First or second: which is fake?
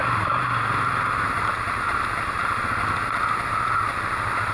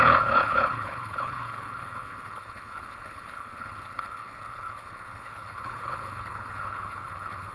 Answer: second